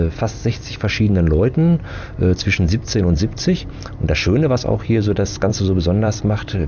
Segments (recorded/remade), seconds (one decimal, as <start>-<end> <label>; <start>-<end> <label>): 0.0-5.5 recorded; 5.5-6.7 remade